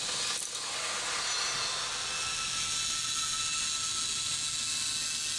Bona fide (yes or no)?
yes